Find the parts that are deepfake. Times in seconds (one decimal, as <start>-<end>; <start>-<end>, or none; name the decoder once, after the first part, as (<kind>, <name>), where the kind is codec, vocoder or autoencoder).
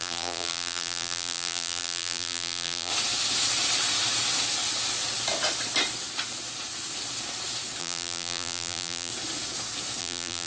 0.0-2.9 (vocoder, BigVGAN v2); 7.8-9.1; 10.0-10.5